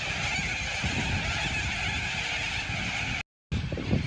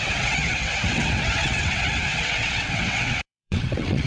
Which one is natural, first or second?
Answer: first